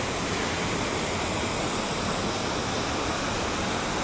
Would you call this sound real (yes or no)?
yes